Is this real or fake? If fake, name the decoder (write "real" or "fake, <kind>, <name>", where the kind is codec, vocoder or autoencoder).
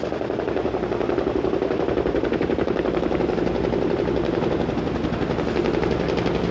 real